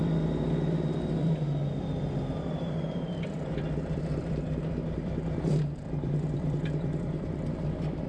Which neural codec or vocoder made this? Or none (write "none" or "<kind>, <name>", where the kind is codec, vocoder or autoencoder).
vocoder, BigVGAN v2